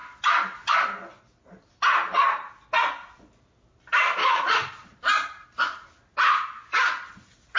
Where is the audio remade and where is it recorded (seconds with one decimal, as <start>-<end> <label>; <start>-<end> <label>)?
0.0-4.2 recorded; 4.2-5.0 remade; 5.0-7.6 recorded